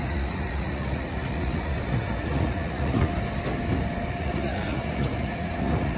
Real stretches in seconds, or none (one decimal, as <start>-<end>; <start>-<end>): 3.1-4.1